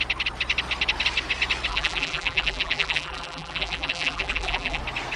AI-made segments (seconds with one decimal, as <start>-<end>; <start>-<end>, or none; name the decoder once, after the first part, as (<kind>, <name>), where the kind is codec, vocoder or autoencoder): 1.7-4.8 (vocoder, BigVGAN v2)